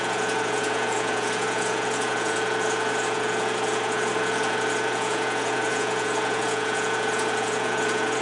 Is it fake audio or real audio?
fake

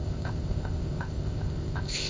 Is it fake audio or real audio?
fake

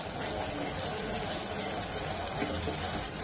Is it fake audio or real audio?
real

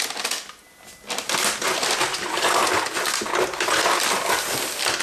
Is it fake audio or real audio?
real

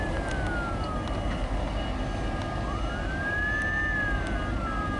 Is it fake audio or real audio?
real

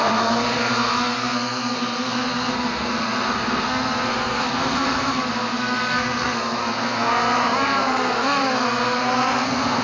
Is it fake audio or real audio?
fake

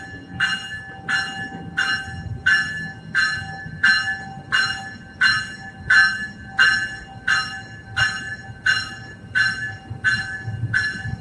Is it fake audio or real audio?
real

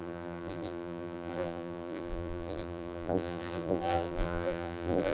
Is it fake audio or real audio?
fake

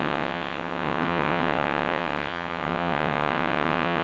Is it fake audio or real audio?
fake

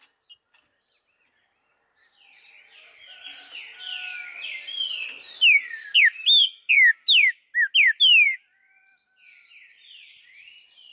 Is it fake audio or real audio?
real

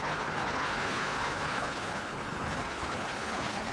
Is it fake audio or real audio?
fake